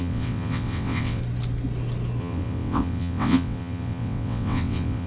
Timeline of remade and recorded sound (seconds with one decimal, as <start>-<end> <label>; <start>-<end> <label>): 0.0-1.2 remade; 1.2-2.2 recorded; 2.2-5.1 remade